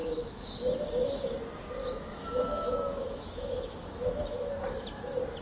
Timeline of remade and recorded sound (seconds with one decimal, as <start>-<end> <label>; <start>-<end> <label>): 0.0-0.5 remade; 0.5-1.8 recorded; 1.8-4.5 remade; 4.5-5.4 recorded